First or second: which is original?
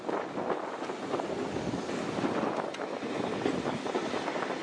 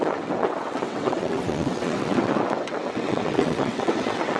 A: first